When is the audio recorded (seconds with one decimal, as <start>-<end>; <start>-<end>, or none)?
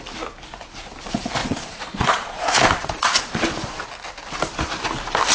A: 0.0-1.4; 2.4-2.8; 3.8-5.3